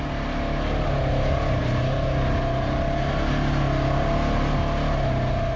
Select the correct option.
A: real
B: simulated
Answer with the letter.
A